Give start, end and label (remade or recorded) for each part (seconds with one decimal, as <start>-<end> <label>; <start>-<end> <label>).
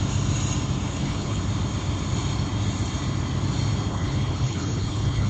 0.0-0.9 recorded; 0.9-1.4 remade; 1.4-3.9 recorded; 3.9-5.3 remade